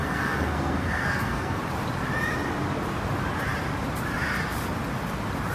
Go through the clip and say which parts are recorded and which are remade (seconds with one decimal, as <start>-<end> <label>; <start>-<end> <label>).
0.0-1.6 remade; 1.6-5.5 recorded